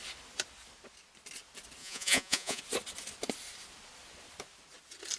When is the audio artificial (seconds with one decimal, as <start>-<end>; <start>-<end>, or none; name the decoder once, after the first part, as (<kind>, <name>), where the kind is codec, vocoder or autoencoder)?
1.8-2.6 (vocoder, Vocos)